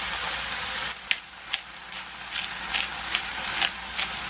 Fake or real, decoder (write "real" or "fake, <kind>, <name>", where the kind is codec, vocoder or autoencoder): real